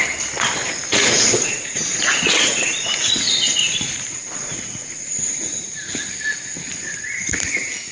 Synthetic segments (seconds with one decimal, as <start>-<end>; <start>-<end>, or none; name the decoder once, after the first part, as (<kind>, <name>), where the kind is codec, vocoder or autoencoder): 0.9-5.6 (vocoder, Vocos)